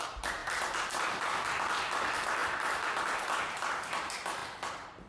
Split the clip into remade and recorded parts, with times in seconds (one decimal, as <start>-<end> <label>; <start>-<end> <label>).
0.0-5.1 recorded